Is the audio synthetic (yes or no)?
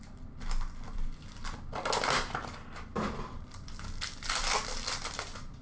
no